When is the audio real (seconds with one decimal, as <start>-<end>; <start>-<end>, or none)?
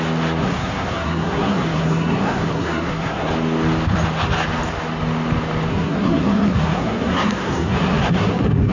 0.0-0.4; 3.3-5.7